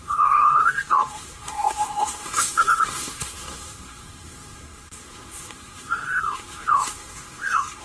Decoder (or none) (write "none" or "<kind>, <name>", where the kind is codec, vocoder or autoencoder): codec, SNAC